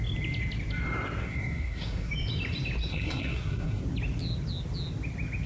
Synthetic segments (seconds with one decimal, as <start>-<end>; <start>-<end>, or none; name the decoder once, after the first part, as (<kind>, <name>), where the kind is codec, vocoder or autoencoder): 1.2-2.1 (codec, SNAC); 2.9-3.8